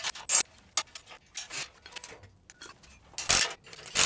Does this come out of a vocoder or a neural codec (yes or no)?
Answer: no